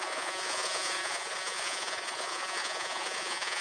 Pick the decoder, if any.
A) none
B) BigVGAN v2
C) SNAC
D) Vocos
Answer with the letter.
D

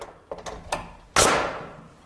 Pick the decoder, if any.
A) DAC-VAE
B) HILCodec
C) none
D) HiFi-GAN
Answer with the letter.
C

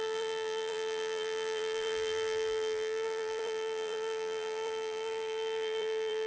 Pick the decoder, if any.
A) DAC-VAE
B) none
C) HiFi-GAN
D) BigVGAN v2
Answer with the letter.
D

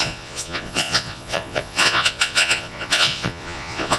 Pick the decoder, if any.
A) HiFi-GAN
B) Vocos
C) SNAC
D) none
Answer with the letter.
B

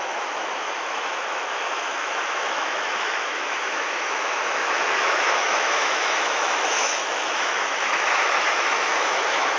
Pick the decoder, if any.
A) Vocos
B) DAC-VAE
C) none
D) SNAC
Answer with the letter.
B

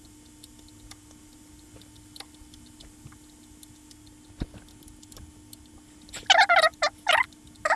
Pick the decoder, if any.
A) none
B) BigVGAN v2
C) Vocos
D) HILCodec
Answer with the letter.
A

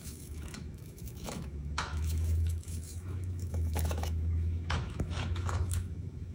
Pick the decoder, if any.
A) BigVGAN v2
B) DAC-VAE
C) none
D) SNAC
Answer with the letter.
B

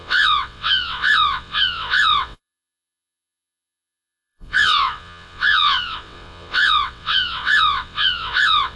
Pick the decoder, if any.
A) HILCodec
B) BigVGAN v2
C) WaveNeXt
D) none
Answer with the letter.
C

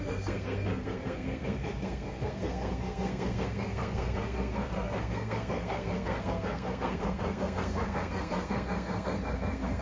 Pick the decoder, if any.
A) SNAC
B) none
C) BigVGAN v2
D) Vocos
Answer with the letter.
A